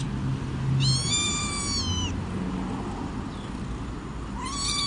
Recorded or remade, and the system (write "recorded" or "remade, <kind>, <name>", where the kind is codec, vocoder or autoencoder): recorded